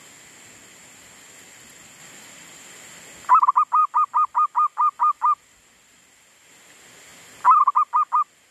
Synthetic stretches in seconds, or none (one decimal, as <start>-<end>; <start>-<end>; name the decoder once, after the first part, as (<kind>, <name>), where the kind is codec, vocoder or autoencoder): none